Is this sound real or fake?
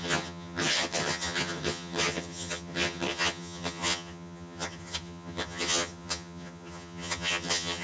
fake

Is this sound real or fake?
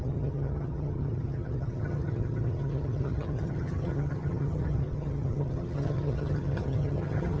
fake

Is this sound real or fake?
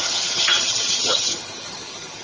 fake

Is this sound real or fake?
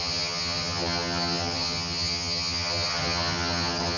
fake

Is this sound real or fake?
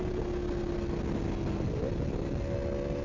real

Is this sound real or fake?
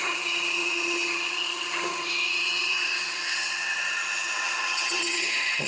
fake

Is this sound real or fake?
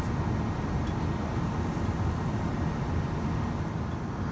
real